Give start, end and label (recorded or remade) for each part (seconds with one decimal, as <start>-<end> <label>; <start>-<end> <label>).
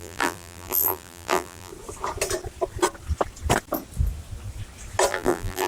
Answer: 0.0-1.7 remade; 1.7-5.1 recorded; 5.1-5.7 remade